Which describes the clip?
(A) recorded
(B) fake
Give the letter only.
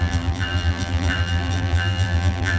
B